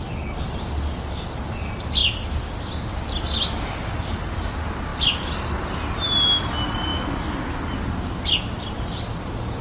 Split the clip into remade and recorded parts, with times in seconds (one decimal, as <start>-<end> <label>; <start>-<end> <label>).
0.0-9.6 recorded